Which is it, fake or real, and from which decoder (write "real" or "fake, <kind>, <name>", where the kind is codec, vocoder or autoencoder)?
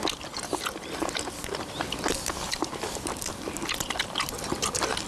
real